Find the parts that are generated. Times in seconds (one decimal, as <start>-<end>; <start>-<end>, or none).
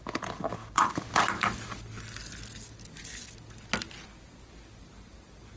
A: none